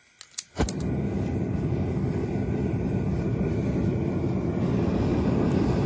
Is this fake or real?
real